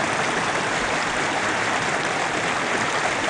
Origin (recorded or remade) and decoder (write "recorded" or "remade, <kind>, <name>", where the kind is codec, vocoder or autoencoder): recorded